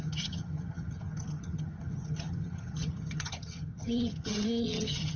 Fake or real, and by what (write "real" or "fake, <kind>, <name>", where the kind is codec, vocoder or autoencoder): fake, vocoder, HiFi-GAN